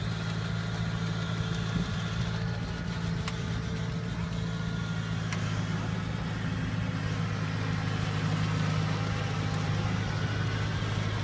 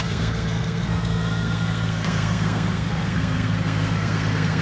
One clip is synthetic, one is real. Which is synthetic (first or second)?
second